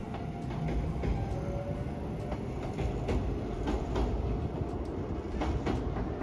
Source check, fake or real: real